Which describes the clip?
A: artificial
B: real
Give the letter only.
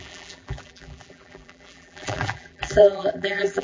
A